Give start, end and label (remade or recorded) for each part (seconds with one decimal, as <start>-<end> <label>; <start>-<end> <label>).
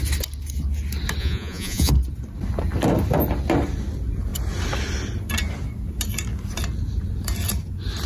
0.0-1.2 recorded; 1.2-1.9 remade; 1.9-8.1 recorded